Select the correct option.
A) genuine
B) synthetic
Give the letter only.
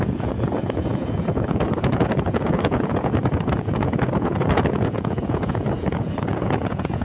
B